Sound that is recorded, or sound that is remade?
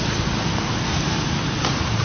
recorded